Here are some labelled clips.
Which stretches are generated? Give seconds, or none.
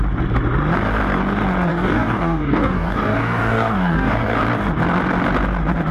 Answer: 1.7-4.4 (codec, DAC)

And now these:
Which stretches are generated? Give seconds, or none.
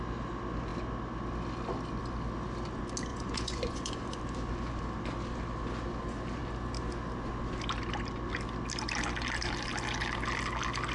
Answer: 3.1-4.2 (vocoder, Vocos)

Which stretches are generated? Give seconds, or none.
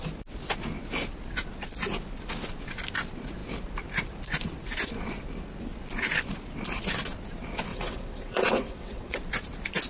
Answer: 7.7-9.2 (vocoder, WaveNeXt)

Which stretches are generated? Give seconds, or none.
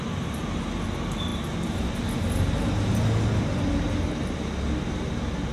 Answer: none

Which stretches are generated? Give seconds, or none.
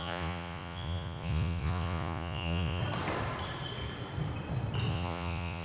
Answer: 0.0-2.8 (vocoder, Vocos); 4.9-5.6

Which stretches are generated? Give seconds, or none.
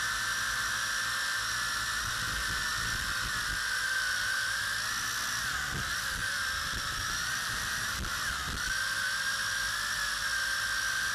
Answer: 2.7-4.6 (vocoder, BigVGAN v2); 6.2-8.3